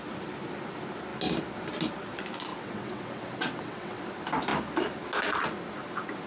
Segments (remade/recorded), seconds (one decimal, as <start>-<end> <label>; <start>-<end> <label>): 0.0-2.5 recorded; 2.5-4.0 remade; 4.0-6.3 recorded